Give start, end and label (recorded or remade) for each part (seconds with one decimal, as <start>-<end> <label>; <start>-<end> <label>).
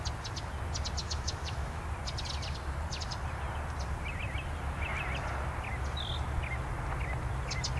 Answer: 0.0-1.0 recorded; 1.0-1.8 remade; 1.8-7.8 recorded